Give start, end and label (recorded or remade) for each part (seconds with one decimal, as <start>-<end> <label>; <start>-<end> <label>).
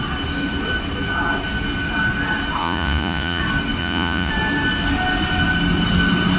0.0-2.6 recorded; 2.6-3.4 remade; 3.4-3.8 recorded; 3.8-4.3 remade; 4.3-6.4 recorded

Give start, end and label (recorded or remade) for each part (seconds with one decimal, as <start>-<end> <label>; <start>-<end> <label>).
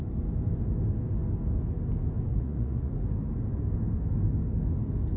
0.0-2.3 recorded; 2.3-2.9 remade; 2.9-5.2 recorded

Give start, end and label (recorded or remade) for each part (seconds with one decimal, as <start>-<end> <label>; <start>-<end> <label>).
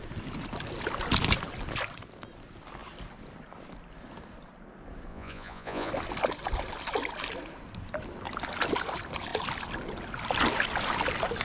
0.0-5.1 recorded; 5.1-5.9 remade; 5.9-11.4 recorded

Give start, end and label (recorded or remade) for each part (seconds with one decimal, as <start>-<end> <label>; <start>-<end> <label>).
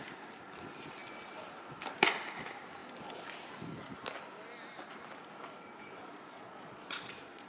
0.0-5.8 recorded; 5.8-7.5 remade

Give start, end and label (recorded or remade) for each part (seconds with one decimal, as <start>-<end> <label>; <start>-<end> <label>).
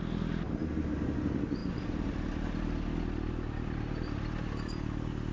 0.0-5.3 recorded